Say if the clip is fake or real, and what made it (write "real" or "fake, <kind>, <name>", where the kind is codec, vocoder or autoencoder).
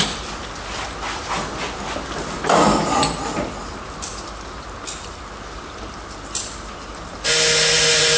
real